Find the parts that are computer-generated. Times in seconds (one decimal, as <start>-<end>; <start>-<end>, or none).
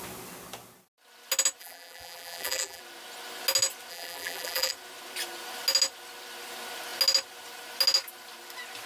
1.6-2.8; 3.9-4.7